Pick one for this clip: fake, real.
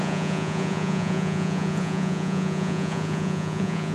fake